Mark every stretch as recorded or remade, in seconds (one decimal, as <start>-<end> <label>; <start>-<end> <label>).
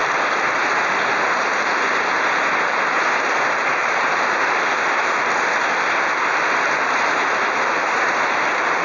0.0-3.8 recorded; 3.8-5.2 remade; 5.2-8.8 recorded